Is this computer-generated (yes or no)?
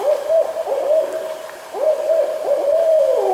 yes